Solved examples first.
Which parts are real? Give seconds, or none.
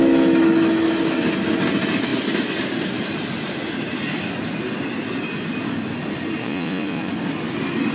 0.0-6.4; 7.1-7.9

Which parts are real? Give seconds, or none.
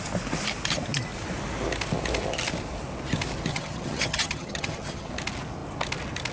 0.0-3.5; 5.1-6.3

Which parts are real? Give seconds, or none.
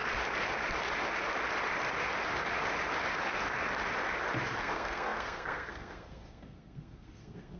0.0-4.6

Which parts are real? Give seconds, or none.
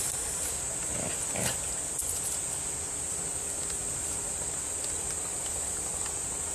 0.0-6.5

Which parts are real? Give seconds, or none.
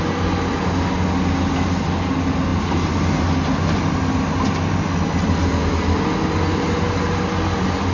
0.0-7.9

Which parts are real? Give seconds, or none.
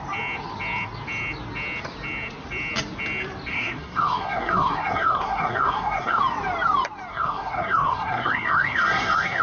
0.0-3.5; 6.2-7.1